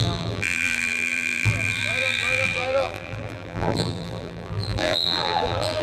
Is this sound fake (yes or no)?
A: yes